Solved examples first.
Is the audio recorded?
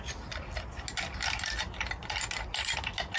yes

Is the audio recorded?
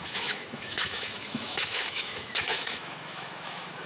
no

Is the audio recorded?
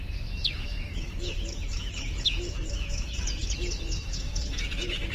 no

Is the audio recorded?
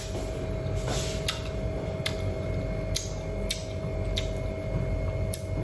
yes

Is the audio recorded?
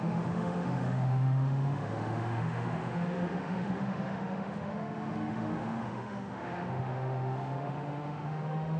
no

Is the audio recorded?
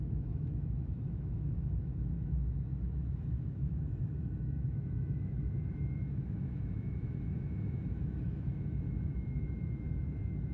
no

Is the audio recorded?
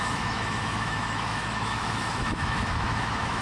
no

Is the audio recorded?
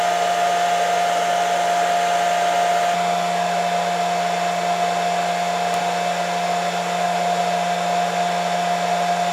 yes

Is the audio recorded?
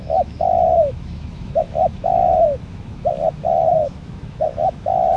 no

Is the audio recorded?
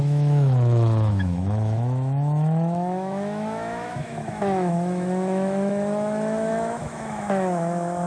no